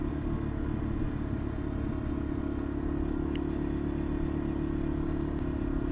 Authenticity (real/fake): real